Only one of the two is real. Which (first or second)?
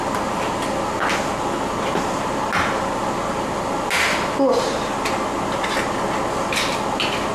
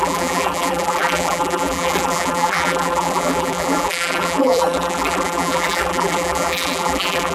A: first